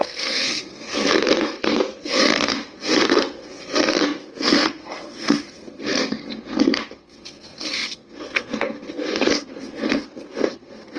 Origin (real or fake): fake